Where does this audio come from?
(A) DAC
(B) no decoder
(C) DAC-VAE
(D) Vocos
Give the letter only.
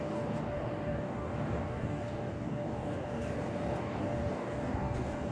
A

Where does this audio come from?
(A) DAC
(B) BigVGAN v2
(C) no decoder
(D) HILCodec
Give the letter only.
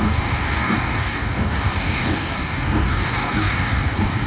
A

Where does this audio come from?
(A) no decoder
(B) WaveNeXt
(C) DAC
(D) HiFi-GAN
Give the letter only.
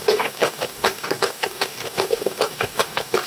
C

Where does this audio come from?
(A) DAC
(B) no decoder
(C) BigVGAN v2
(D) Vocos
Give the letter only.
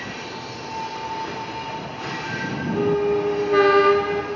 B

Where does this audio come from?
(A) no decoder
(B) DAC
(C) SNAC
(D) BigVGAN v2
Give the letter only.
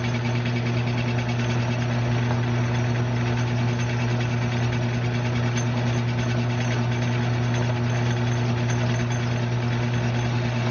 A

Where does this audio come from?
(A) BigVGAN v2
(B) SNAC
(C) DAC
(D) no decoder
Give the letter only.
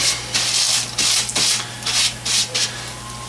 D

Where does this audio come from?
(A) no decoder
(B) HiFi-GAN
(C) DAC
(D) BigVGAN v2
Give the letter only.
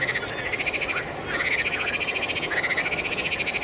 A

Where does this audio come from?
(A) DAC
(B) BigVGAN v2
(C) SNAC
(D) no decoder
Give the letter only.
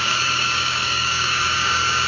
A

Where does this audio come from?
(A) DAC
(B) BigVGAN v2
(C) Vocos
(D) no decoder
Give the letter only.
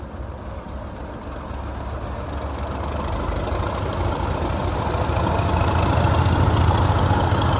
D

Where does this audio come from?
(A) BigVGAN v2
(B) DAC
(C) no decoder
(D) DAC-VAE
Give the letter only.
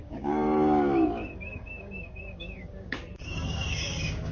B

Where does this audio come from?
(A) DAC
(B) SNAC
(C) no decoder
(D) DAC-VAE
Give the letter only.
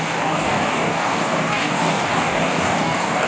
A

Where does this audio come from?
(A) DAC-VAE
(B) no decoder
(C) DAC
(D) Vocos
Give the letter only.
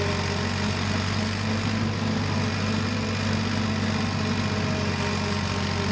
B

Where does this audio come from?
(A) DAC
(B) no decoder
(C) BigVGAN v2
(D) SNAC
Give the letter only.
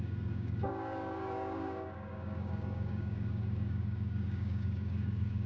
A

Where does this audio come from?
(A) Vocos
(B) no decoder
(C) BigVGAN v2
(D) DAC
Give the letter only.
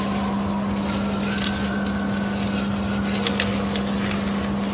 B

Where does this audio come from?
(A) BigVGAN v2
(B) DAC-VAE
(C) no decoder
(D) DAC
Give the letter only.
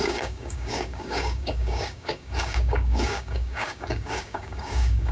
D